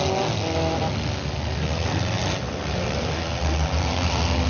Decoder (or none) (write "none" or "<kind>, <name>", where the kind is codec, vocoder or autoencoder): none